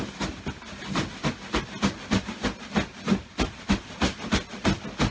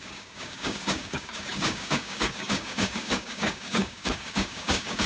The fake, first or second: second